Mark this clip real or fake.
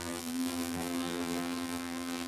fake